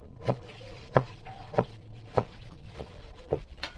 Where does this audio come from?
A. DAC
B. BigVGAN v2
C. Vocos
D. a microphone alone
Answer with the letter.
C